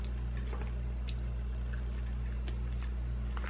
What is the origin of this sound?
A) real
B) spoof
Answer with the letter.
A